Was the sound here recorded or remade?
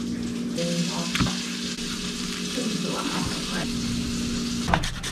recorded